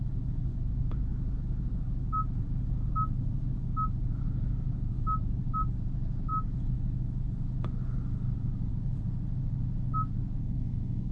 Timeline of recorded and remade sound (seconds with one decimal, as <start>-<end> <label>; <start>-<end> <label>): 0.0-10.4 recorded; 10.4-11.1 remade